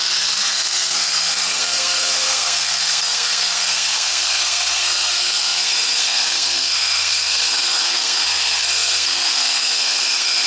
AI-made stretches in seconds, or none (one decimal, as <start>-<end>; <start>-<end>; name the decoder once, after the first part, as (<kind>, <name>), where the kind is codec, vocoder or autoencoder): 0.0-10.5 (codec, SNAC)